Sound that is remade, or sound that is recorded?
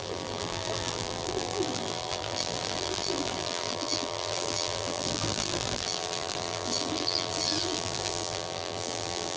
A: remade